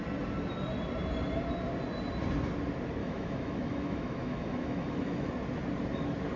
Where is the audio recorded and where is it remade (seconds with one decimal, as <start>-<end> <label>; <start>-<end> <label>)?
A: 0.0-3.0 recorded; 3.0-5.3 remade; 5.3-6.4 recorded